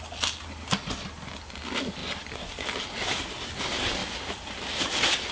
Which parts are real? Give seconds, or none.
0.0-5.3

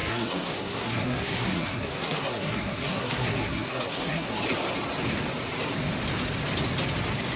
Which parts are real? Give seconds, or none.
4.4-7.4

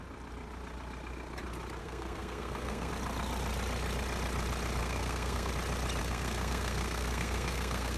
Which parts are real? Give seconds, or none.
0.0-1.8; 2.9-4.8; 5.5-6.0

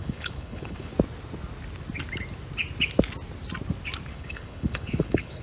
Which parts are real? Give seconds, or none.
0.9-4.1